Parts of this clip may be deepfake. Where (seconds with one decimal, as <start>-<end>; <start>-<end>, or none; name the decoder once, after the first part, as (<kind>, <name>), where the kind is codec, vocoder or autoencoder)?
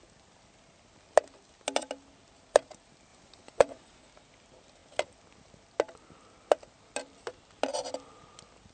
3.1-4.0 (vocoder, Vocos)